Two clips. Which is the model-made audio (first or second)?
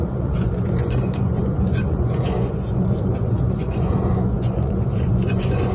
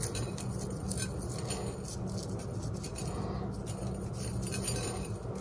first